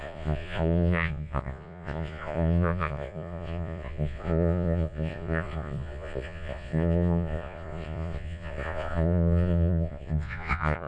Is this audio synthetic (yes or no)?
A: yes